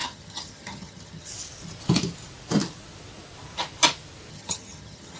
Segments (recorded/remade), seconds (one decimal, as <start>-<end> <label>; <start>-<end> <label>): 0.0-1.3 remade; 1.3-4.3 recorded; 4.3-5.2 remade

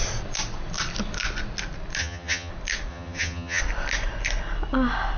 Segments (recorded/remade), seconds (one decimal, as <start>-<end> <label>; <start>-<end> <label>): 0.0-2.0 recorded; 2.0-2.5 remade; 2.5-2.9 recorded; 2.9-3.6 remade; 3.6-5.2 recorded

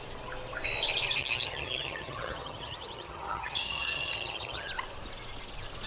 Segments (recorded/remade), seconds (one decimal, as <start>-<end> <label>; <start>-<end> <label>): 0.0-1.2 recorded; 1.2-4.7 remade; 4.7-5.9 recorded

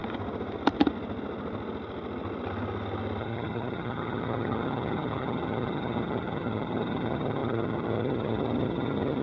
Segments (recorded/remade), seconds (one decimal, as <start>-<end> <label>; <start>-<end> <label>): 0.0-3.2 recorded; 3.2-9.2 remade

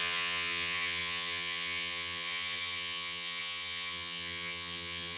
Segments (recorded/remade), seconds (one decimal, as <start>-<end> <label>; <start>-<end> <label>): 0.0-5.2 remade

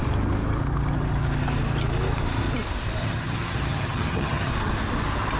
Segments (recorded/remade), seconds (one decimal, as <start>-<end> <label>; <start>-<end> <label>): 0.0-3.0 recorded; 3.0-4.5 remade; 4.5-5.4 recorded

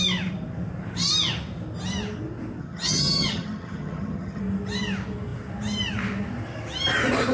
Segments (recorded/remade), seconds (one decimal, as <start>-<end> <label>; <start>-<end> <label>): 0.0-2.6 recorded; 2.6-4.4 remade; 4.4-7.3 recorded